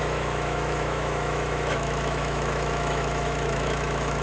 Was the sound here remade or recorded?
remade